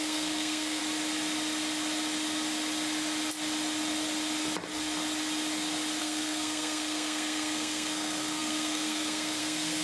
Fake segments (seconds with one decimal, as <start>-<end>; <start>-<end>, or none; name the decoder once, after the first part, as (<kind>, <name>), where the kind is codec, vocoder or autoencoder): 0.0-0.8 (codec, SNAC); 6.0-9.8